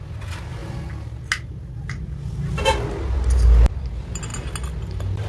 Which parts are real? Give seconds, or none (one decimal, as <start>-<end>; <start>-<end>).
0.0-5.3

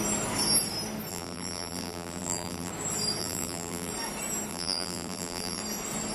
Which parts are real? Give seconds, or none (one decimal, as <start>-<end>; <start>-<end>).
0.0-1.1; 2.7-3.2; 3.9-4.5; 5.6-6.1

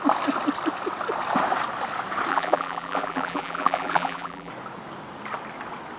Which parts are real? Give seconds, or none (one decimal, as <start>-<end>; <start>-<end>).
0.0-2.3; 4.5-6.0